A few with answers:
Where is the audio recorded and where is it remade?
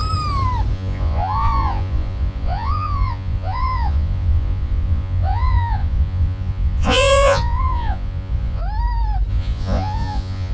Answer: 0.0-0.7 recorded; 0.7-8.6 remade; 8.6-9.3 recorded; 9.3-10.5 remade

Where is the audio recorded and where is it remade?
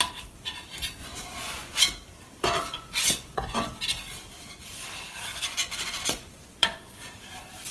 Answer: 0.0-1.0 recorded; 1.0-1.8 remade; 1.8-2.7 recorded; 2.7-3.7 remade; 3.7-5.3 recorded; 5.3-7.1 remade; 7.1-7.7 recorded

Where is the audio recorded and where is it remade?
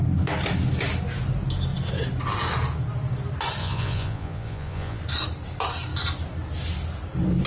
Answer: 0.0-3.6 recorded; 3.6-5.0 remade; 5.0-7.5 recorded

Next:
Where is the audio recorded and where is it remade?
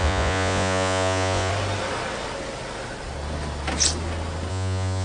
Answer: 0.0-1.5 remade; 1.5-4.5 recorded; 4.5-5.0 remade